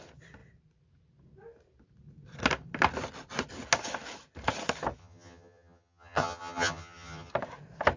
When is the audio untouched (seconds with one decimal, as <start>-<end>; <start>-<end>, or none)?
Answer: 0.0-5.0; 7.3-8.0